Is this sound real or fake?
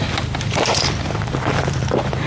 fake